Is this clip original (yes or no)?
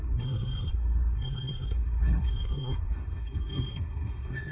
no